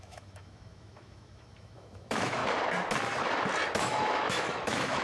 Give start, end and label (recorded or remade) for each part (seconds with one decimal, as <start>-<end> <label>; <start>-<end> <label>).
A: 0.0-2.4 remade; 2.4-3.8 recorded; 3.8-5.0 remade